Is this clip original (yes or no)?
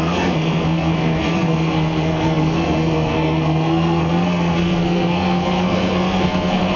no